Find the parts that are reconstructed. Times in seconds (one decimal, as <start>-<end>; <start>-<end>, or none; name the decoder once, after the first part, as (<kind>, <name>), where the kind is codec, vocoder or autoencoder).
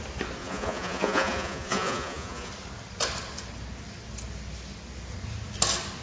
0.4-2.5 (vocoder, Vocos)